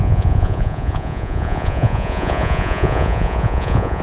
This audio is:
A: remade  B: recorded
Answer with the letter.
A